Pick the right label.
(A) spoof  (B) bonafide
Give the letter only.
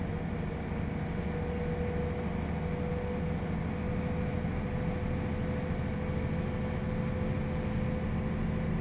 B